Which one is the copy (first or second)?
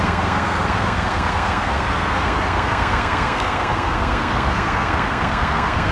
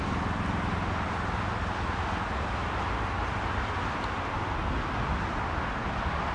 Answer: first